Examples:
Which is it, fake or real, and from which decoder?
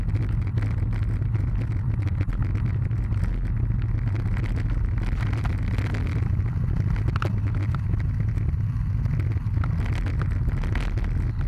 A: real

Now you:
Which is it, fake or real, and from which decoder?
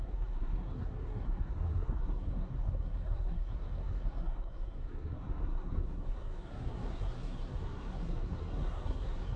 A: fake, codec, SNAC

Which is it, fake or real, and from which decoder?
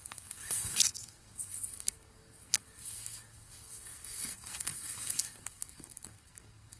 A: fake, codec, SNAC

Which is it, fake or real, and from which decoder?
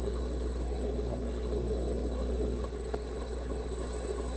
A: fake, codec, SNAC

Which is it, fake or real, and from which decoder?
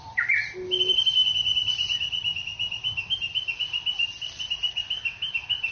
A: real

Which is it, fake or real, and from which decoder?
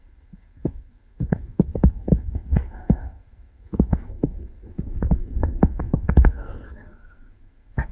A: fake, codec, SNAC